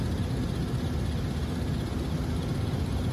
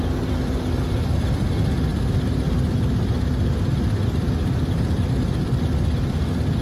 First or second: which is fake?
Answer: second